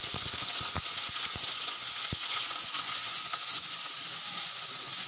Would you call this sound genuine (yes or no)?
no